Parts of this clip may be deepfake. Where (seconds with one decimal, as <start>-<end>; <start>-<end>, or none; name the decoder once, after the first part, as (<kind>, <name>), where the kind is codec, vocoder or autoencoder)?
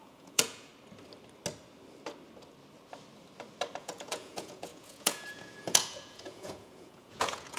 0.0-0.7 (vocoder, Vocos); 3.8-7.6